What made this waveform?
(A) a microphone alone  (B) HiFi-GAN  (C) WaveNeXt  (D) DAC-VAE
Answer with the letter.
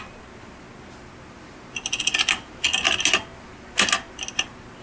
A